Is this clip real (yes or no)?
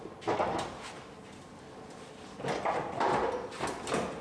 yes